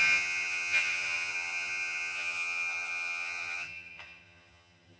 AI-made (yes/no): yes